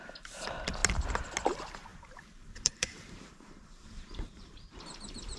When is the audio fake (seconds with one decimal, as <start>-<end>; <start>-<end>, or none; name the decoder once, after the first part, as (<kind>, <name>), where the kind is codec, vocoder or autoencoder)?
1.9-5.4 (vocoder, BigVGAN v2)